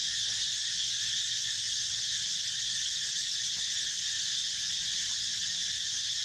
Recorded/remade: recorded